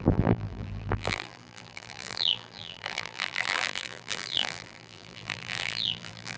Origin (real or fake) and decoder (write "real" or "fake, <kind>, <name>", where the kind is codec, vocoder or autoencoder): fake, vocoder, BigVGAN v2